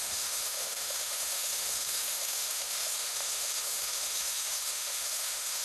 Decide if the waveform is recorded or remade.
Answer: remade